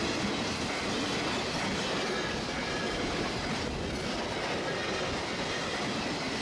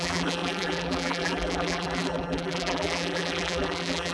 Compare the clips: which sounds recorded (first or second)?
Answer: first